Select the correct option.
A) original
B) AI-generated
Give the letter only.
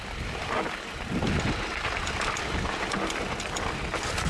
A